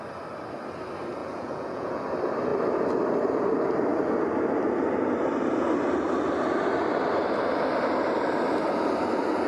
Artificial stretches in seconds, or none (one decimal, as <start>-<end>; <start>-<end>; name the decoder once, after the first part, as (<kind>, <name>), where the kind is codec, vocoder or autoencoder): 1.2-2.0 (vocoder, Vocos)